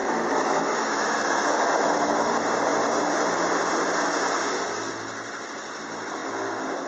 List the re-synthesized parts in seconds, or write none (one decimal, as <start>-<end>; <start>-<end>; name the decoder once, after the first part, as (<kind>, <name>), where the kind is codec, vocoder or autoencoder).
0.0-2.3 (autoencoder, DAC-VAE)